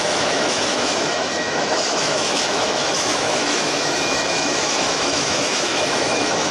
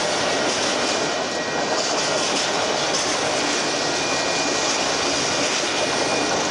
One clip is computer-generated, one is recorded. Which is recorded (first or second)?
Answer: second